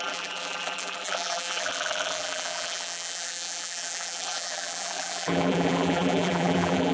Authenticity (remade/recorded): remade